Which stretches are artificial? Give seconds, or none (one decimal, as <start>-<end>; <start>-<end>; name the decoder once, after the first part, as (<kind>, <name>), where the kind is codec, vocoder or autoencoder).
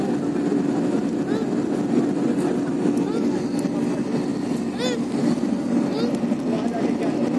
none